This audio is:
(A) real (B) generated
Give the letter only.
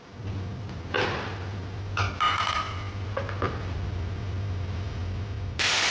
A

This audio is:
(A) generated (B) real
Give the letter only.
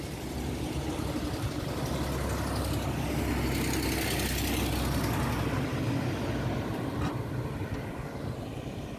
B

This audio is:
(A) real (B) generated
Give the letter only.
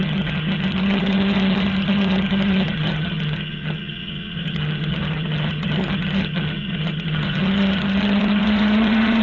B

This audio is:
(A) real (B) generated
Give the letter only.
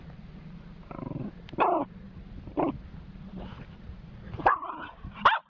A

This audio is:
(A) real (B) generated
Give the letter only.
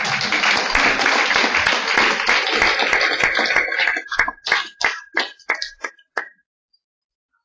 A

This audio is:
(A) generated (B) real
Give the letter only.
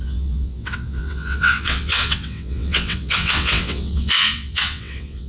A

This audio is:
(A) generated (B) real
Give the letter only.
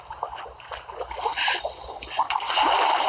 B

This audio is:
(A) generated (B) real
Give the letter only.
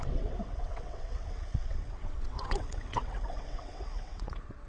A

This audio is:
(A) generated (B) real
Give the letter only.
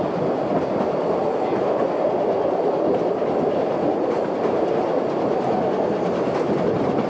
B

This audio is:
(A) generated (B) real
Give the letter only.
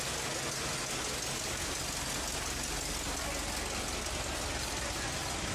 B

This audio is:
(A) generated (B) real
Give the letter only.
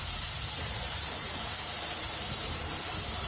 A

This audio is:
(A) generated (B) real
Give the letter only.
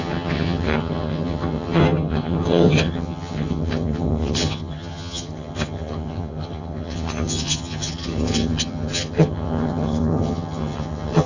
A